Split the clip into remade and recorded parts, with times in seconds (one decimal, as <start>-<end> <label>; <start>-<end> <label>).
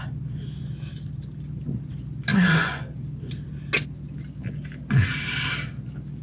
0.0-2.3 recorded; 2.3-2.8 remade; 2.8-6.2 recorded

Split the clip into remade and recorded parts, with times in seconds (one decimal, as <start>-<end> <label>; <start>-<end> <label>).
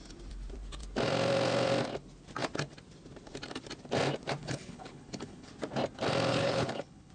0.0-4.4 recorded; 4.4-5.5 remade; 5.5-6.3 recorded; 6.3-7.1 remade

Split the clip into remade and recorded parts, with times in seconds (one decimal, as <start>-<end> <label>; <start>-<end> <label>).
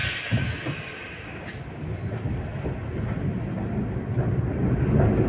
0.0-5.3 recorded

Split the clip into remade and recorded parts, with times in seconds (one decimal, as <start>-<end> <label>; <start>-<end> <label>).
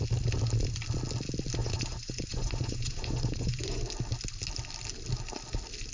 0.0-1.6 recorded; 1.6-3.8 remade; 3.8-5.9 recorded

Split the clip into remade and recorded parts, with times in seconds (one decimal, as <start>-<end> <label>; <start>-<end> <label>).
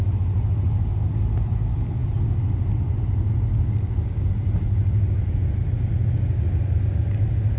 0.0-3.5 recorded; 3.5-4.3 remade; 4.3-7.6 recorded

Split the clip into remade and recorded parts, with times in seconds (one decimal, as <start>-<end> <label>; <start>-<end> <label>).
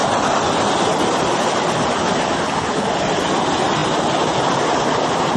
0.0-2.3 remade; 2.3-5.4 recorded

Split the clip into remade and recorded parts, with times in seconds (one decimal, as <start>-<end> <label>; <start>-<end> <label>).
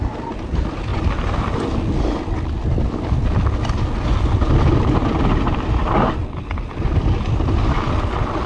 0.0-6.2 recorded; 6.2-7.2 remade; 7.2-8.5 recorded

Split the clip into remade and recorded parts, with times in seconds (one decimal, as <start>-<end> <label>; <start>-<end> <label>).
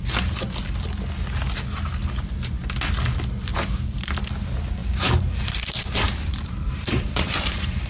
0.0-3.5 recorded; 3.5-4.1 remade; 4.1-4.8 recorded; 4.8-7.9 remade